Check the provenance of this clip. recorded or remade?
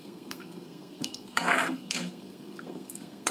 remade